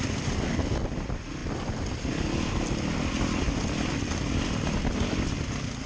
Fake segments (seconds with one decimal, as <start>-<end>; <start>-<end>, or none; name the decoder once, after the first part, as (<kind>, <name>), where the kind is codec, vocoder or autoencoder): none